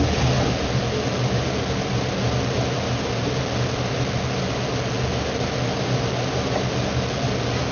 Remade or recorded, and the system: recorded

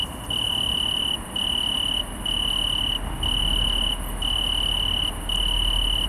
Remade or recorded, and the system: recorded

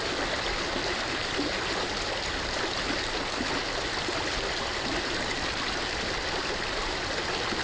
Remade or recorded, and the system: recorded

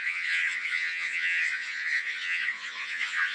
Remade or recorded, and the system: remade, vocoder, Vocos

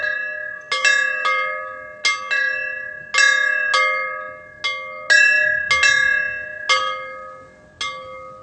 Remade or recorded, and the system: recorded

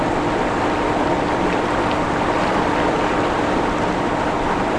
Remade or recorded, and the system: recorded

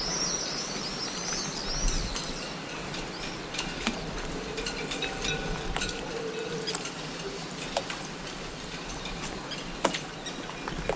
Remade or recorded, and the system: recorded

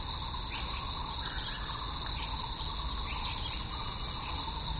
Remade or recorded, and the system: recorded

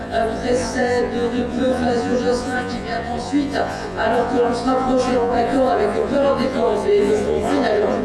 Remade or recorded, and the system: remade, vocoder, Vocos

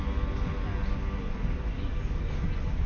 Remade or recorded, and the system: recorded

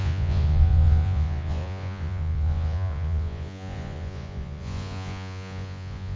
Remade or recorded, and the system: remade, vocoder, Vocos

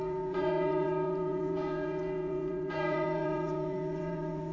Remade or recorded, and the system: remade, vocoder, Vocos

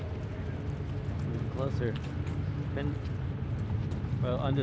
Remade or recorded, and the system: recorded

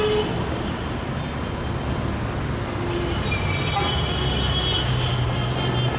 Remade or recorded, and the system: recorded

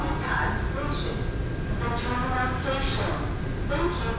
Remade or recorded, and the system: recorded